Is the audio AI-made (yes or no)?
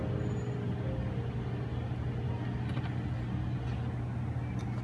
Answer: no